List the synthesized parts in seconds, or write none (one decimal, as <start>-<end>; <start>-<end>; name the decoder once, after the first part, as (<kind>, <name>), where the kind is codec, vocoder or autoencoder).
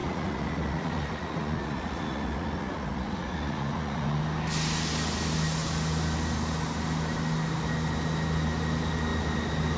0.0-4.2 (vocoder, Vocos)